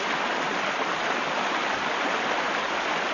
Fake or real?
real